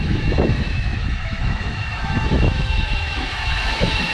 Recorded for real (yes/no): no